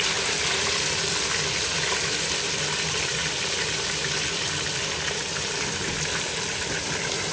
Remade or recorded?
recorded